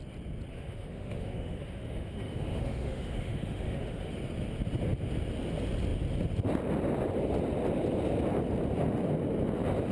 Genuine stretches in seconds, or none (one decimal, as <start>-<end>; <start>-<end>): 0.0-0.5; 4.1-9.9